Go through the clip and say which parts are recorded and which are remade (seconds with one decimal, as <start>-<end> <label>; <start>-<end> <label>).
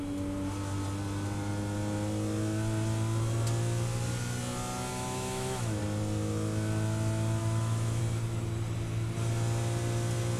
0.0-4.9 recorded; 4.9-5.8 remade; 5.8-7.4 recorded; 7.4-8.0 remade; 8.0-10.4 recorded